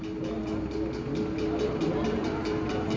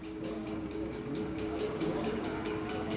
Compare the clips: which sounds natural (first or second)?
first